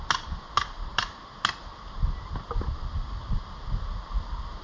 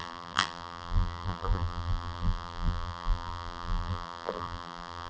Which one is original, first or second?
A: first